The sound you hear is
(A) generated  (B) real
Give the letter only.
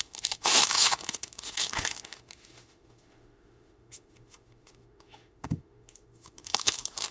A